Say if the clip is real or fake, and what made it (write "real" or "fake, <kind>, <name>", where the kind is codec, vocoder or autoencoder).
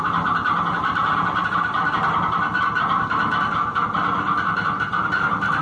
real